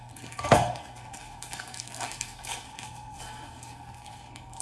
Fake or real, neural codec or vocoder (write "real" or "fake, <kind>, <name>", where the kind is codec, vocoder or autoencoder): fake, codec, SNAC